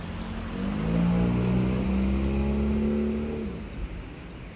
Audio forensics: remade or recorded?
recorded